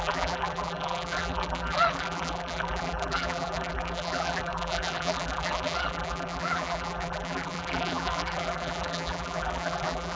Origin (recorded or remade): remade